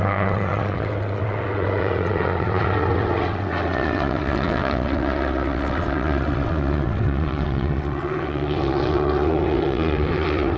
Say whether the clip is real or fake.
fake